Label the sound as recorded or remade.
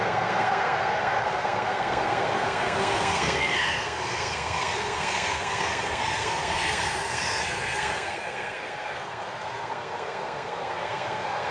remade